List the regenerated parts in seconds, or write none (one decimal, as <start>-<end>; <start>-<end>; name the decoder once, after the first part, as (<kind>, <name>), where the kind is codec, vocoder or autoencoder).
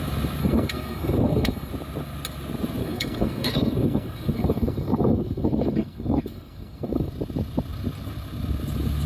0.4-1.7 (codec, SNAC); 2.8-7.1